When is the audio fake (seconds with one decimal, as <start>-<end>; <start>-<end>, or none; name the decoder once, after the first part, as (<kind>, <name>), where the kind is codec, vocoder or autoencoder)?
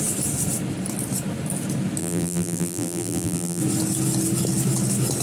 2.0-3.6 (vocoder, BigVGAN v2)